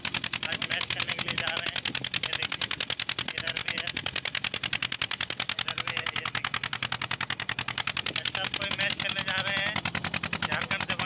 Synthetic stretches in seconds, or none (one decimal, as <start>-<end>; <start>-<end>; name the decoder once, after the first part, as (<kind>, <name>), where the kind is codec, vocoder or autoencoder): none